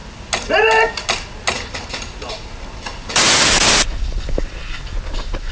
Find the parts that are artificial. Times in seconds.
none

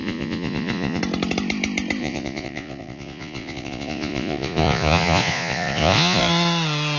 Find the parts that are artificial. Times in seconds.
0.0-1.0 (vocoder, Vocos); 2.0-6.2

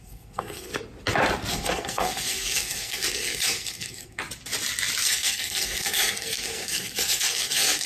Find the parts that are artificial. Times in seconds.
0.0-0.7 (codec, SNAC); 1.5-4.2; 5.0-7.9